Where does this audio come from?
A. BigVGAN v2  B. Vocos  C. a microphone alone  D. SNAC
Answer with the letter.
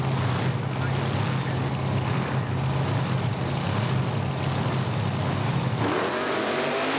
C